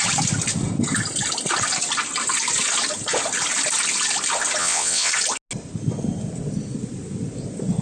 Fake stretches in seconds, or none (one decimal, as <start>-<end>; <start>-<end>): 4.6-5.1